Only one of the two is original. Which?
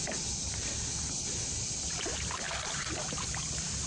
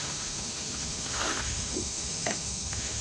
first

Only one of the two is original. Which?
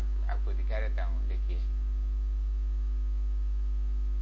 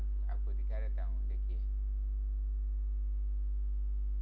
second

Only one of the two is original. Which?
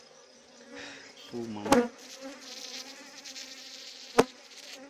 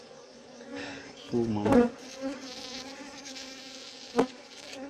first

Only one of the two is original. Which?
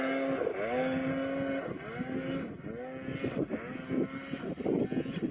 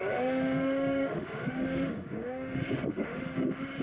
first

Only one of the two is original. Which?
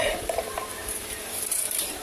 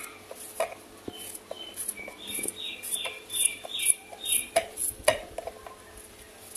second